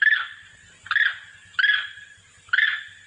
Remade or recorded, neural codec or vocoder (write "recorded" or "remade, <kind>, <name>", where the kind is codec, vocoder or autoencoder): recorded